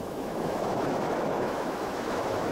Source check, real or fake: fake